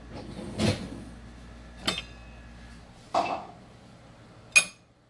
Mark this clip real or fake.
real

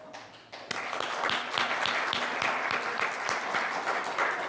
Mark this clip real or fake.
real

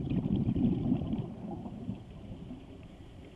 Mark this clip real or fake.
fake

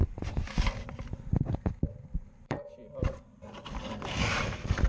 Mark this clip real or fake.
fake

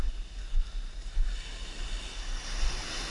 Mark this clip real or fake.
real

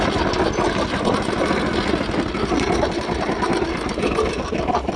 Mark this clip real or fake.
real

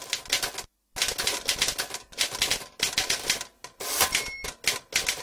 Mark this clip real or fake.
real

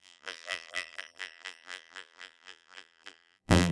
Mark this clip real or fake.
fake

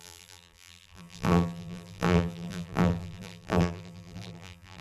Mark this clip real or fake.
fake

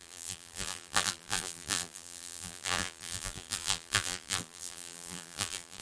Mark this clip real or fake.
fake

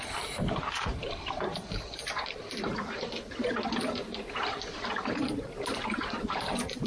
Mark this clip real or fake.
fake